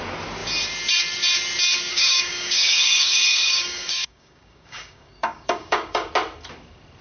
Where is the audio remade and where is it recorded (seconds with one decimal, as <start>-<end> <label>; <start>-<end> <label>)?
0.0-1.9 recorded; 1.9-6.1 remade; 6.1-7.0 recorded